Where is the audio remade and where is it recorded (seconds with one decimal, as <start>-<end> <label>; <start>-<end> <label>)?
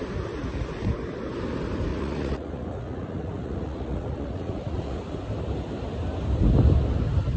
0.0-1.9 recorded; 1.9-5.1 remade; 5.1-7.4 recorded